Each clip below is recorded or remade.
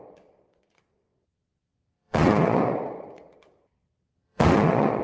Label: remade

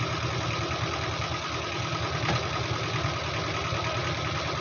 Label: recorded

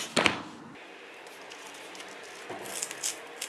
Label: recorded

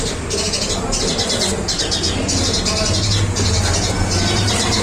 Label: recorded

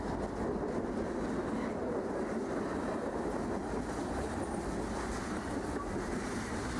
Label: recorded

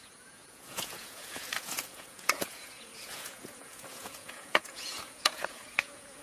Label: remade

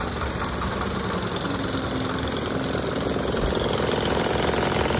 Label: recorded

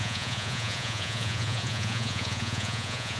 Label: remade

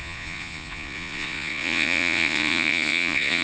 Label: remade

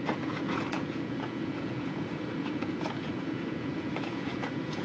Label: remade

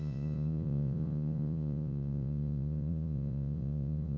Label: remade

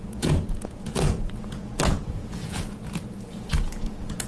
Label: remade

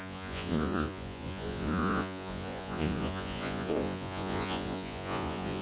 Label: remade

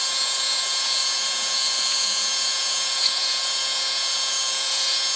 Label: remade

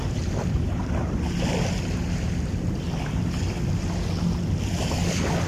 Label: recorded